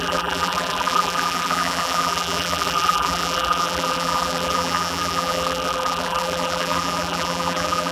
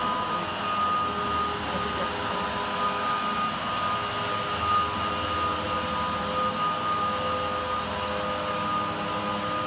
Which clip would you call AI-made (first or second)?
first